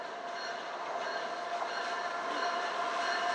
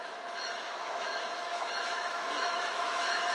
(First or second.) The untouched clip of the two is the first